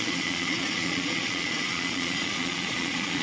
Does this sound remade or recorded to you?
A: remade